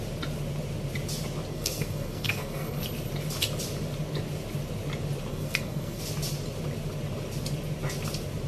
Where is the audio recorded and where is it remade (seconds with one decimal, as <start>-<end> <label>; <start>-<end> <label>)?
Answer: 0.0-1.5 recorded; 1.5-2.8 remade; 2.8-5.3 recorded; 5.3-6.0 remade; 6.0-8.5 recorded